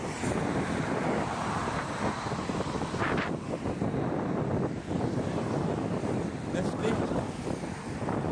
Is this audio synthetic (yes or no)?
no